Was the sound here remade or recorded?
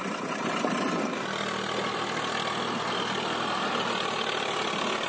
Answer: recorded